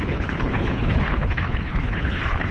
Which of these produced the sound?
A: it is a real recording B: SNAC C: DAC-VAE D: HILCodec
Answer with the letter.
D